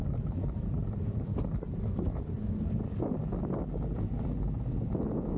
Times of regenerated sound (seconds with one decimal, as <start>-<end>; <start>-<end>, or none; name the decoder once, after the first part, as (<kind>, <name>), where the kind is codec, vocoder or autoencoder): none

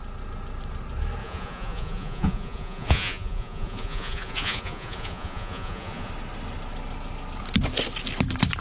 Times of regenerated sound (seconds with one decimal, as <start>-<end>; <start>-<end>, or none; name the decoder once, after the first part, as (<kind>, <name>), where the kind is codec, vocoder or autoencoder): 1.2-6.1 (vocoder, Vocos)